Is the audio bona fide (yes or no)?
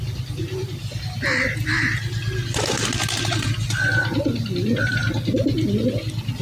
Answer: yes